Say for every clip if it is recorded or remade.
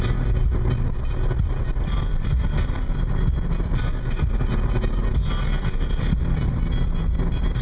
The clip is recorded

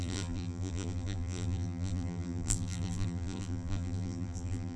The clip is remade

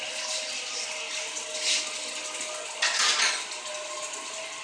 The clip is recorded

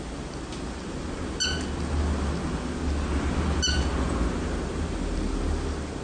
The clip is recorded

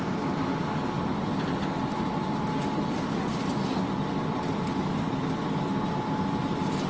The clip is recorded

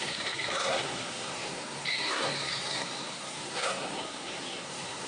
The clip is remade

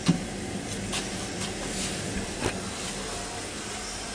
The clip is recorded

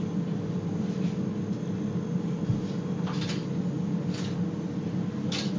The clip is recorded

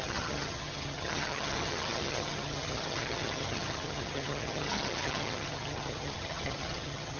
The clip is remade